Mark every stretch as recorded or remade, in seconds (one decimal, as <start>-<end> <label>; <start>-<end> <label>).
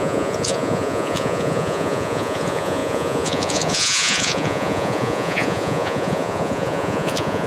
0.0-7.5 remade